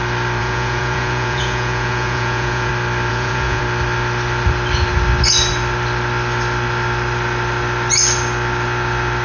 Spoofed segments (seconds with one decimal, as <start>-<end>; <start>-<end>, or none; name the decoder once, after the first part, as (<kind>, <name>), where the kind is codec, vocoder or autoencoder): 0.4-2.7 (vocoder, Vocos); 3.1-3.6